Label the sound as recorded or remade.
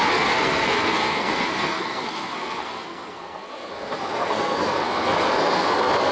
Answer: remade